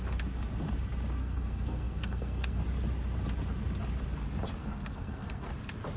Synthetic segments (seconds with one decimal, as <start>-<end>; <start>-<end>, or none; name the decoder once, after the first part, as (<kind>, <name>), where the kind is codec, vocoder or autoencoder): 1.2-2.6 (codec, SNAC); 4.6-5.5